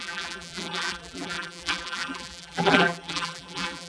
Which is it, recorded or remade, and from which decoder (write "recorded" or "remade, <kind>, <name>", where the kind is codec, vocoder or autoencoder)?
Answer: remade, vocoder, BigVGAN v2